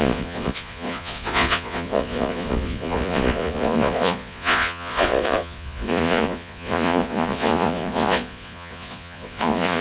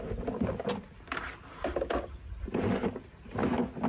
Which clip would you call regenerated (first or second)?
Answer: first